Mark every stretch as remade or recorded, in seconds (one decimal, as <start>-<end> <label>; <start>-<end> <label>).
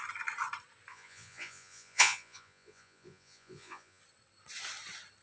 0.0-0.9 recorded; 0.9-4.0 remade; 4.0-5.2 recorded